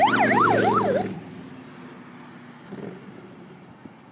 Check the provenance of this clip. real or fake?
real